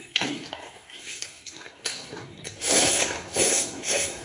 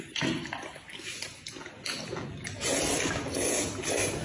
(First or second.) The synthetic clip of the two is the first